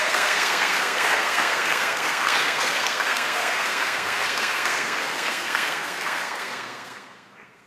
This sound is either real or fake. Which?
fake